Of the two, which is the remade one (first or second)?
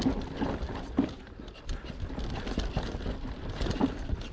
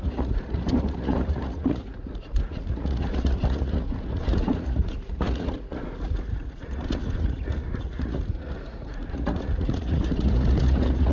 second